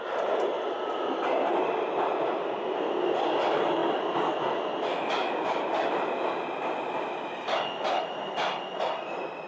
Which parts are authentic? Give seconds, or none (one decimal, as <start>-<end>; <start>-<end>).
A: 0.0-9.5